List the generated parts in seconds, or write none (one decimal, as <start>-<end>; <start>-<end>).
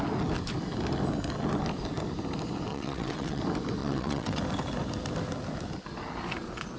2.7-3.4; 3.8-4.4